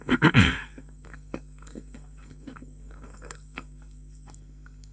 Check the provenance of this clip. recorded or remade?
remade